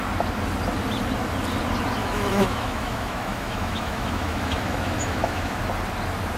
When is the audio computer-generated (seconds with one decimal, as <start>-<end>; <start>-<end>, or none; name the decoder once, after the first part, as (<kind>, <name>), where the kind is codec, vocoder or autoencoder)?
2.0-5.6 (autoencoder, DAC-VAE)